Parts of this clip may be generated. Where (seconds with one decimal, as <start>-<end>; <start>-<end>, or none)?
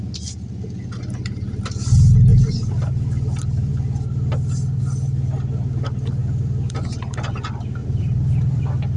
2.3-2.9; 7.8-8.6